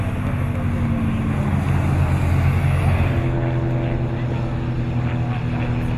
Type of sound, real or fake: real